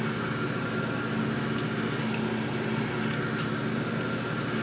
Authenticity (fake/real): real